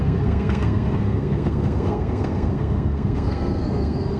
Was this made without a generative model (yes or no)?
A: no